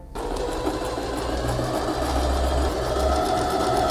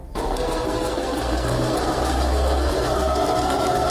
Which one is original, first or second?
first